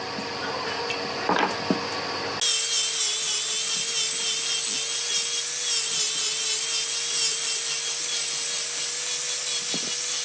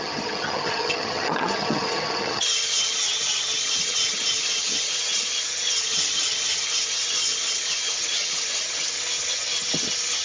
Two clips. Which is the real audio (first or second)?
first